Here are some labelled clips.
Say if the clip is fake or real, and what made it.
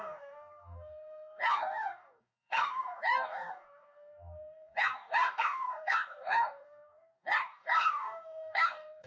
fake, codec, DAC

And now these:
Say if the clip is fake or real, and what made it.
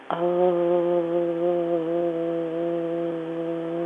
real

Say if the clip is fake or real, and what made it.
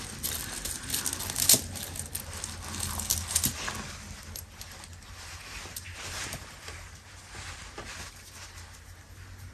real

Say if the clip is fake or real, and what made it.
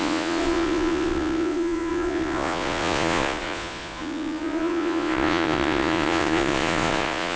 fake, vocoder, Vocos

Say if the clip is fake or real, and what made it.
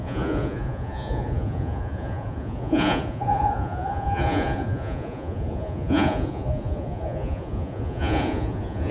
fake, vocoder, Vocos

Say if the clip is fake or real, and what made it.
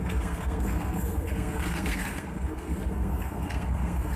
fake, codec, SNAC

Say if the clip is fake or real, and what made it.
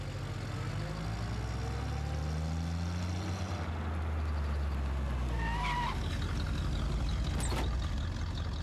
real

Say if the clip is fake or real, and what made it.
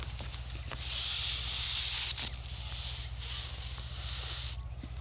real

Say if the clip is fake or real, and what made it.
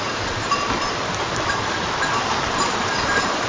real